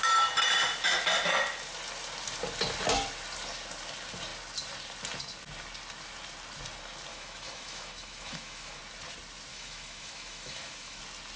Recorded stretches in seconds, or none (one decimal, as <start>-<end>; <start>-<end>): 0.0-7.1; 8.8-9.5; 11.0-11.4